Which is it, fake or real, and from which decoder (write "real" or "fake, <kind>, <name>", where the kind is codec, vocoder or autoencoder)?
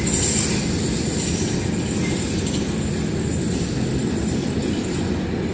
real